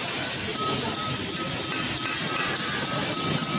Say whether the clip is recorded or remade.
recorded